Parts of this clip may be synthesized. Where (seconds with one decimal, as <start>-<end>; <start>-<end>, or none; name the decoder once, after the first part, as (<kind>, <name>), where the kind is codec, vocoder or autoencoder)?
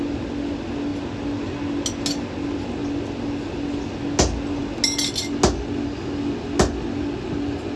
none